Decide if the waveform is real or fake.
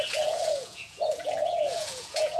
fake